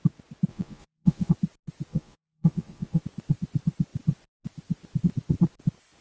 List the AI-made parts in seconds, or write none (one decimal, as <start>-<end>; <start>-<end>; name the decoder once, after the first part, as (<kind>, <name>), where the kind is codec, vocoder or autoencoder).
0.5-1.3 (vocoder, Vocos); 1.9-3.0

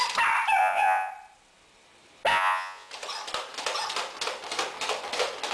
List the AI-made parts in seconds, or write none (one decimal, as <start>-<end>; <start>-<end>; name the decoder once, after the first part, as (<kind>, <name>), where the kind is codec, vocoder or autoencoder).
0.6-1.1 (vocoder, Vocos); 2.3-2.9